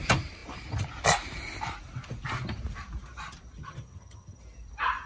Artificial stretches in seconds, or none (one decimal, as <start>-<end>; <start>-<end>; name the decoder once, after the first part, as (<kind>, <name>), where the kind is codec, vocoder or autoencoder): 3.6-4.4 (vocoder, HiFi-GAN)